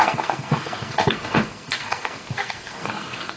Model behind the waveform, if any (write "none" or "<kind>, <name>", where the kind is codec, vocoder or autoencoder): codec, SNAC